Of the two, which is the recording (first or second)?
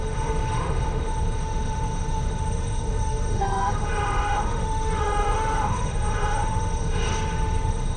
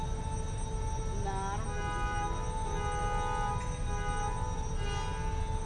second